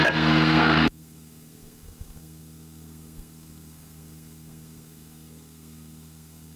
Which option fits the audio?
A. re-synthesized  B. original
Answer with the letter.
A